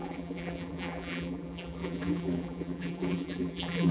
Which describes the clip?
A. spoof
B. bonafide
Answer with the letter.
A